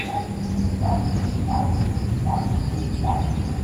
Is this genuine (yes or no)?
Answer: yes